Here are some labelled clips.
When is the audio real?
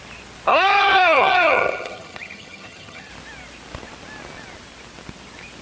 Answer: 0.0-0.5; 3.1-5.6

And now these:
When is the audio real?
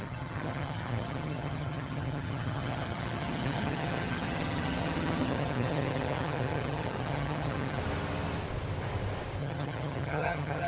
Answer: 7.8-9.4